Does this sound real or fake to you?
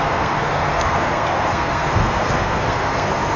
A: fake